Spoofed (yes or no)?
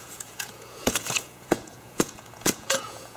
yes